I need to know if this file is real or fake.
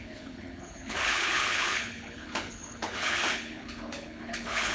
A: fake